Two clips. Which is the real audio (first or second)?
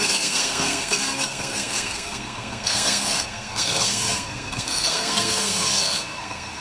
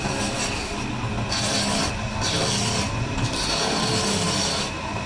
second